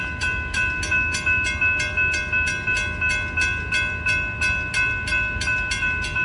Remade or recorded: recorded